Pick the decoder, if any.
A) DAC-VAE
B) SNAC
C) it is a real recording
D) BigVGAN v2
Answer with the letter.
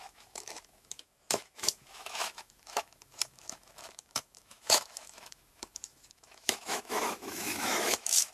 A